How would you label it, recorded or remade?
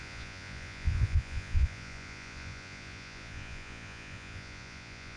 remade